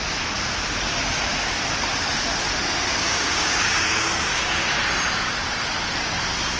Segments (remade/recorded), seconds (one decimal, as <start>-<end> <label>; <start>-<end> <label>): 0.0-2.9 recorded; 2.9-4.7 remade; 4.7-6.6 recorded